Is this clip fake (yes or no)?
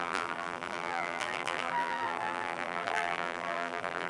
yes